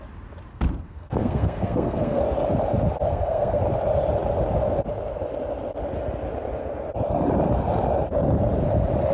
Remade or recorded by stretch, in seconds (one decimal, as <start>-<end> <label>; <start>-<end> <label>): 0.0-0.5 recorded; 0.5-2.2 remade; 2.2-3.1 recorded; 3.1-3.6 remade; 3.6-9.1 recorded